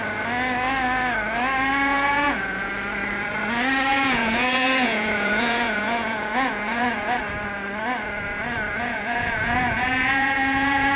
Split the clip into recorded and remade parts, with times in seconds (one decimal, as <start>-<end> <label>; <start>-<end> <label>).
0.0-1.9 recorded; 1.9-2.7 remade; 2.7-3.9 recorded; 3.9-7.2 remade; 7.2-8.7 recorded; 8.7-11.0 remade